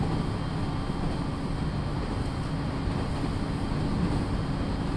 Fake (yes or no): no